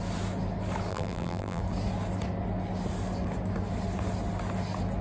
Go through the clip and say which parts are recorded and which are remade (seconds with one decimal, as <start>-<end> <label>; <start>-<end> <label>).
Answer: 0.0-0.9 recorded; 0.9-1.6 remade; 1.6-5.0 recorded